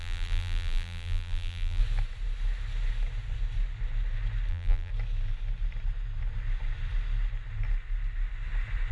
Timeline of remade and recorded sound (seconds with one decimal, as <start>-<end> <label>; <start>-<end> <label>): 0.0-1.8 remade; 1.8-4.5 recorded; 4.5-4.9 remade; 4.9-8.9 recorded